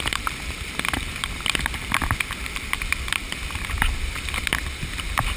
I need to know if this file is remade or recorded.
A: remade